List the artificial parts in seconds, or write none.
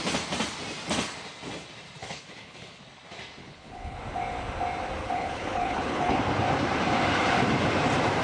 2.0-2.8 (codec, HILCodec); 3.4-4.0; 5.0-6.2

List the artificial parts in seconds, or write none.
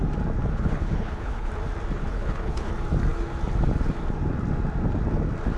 0.5-1.5 (codec, HILCodec); 2.0-2.7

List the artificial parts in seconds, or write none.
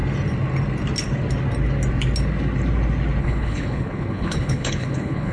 3.2-5.3 (codec, HILCodec)